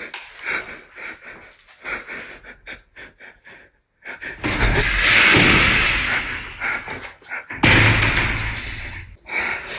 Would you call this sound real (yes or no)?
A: yes